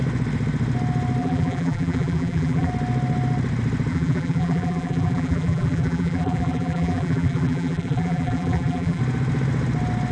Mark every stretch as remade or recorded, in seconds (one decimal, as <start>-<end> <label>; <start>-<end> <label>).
0.0-1.2 recorded; 1.2-2.7 remade; 2.7-3.9 recorded; 3.9-9.0 remade; 9.0-10.1 recorded